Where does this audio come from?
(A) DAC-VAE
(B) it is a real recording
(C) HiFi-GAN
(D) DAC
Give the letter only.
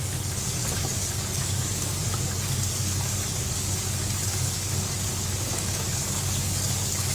D